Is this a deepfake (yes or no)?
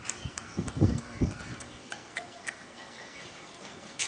yes